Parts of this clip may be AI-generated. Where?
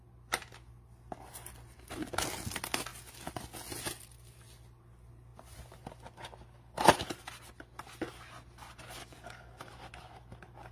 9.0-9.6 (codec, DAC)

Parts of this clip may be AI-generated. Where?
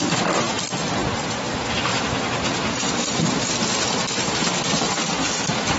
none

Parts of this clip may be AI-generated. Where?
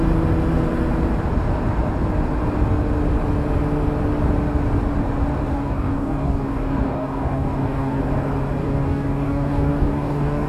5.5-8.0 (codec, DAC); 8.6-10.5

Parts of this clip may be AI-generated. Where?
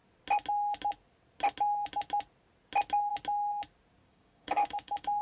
4.0-5.2 (codec, DAC)